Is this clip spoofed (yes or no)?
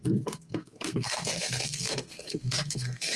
yes